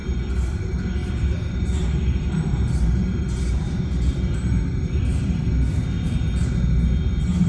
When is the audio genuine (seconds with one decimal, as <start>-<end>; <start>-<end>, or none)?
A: 0.6-1.0; 5.5-7.5